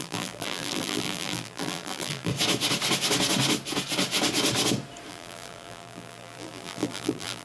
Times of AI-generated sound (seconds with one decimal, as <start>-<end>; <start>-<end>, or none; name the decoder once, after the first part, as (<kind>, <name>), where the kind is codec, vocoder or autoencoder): 0.0-2.3 (vocoder, BigVGAN v2); 5.1-7.4